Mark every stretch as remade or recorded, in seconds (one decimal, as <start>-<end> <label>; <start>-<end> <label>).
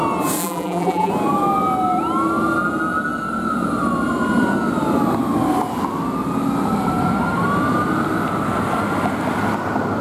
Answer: 0.0-0.4 recorded; 0.4-1.1 remade; 1.1-10.0 recorded